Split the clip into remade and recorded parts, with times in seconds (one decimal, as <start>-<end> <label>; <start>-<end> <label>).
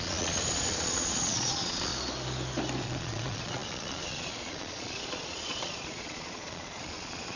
0.0-1.9 remade; 1.9-2.8 recorded; 2.8-7.4 remade